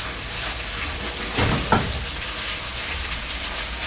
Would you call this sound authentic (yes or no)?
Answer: yes